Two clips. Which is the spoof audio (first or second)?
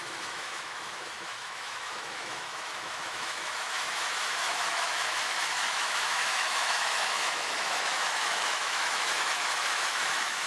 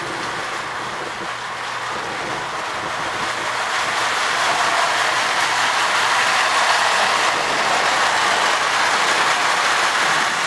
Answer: first